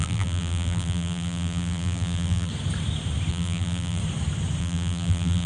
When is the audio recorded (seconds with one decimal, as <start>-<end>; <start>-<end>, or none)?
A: 2.5-3.3; 4.0-4.6